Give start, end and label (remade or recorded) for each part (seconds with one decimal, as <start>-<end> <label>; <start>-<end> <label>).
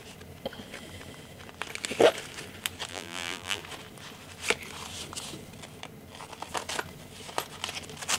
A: 0.0-2.9 recorded; 2.9-3.6 remade; 3.6-8.2 recorded